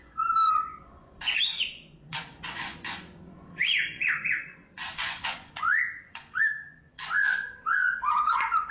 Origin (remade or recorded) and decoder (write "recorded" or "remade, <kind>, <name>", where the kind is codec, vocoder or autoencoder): remade, vocoder, Vocos